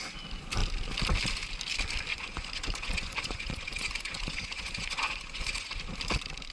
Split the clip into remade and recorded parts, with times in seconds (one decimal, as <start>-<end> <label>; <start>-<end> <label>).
0.0-2.1 recorded; 2.1-5.8 remade; 5.8-6.5 recorded